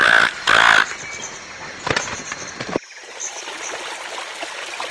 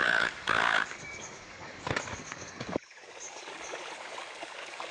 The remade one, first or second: second